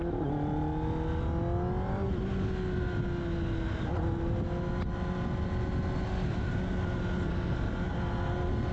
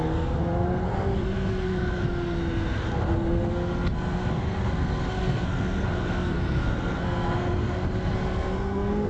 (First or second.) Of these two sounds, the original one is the first